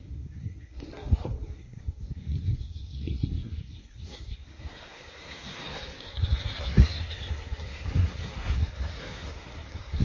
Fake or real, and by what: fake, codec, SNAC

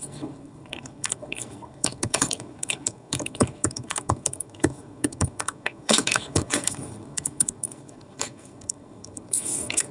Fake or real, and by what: fake, codec, SNAC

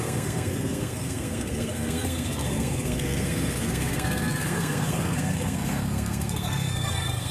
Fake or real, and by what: fake, codec, SNAC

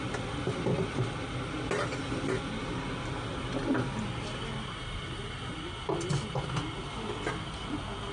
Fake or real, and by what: real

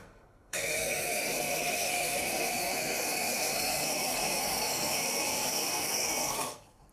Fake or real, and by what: fake, codec, SNAC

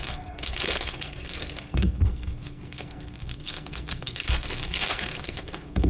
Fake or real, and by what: fake, codec, SNAC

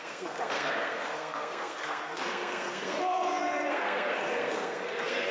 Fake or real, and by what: fake, codec, SNAC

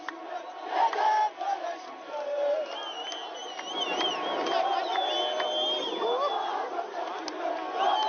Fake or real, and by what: real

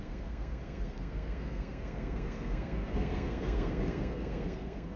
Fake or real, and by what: fake, codec, SNAC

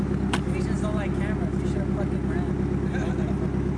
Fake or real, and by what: real